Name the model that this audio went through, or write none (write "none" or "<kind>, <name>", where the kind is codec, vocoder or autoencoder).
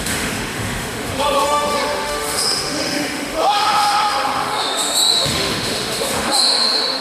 autoencoder, DAC-VAE